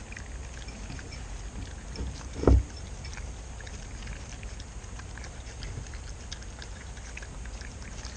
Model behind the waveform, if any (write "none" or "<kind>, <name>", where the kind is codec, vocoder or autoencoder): none